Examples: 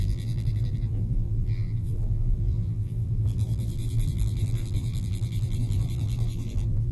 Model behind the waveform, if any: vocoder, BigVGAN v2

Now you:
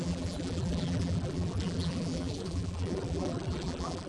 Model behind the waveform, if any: vocoder, BigVGAN v2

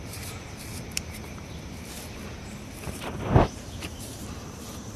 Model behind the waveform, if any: vocoder, BigVGAN v2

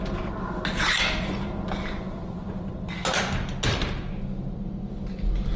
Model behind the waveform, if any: none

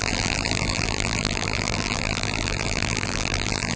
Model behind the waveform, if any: vocoder, BigVGAN v2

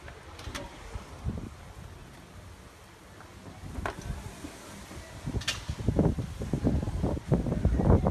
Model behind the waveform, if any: none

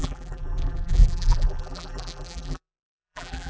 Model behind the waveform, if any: vocoder, BigVGAN v2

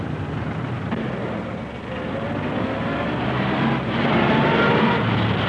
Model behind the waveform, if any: none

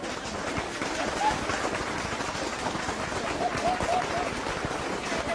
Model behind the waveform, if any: none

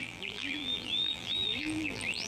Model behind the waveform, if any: vocoder, BigVGAN v2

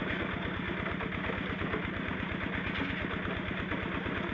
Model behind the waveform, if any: none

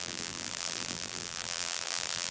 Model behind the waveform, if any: vocoder, BigVGAN v2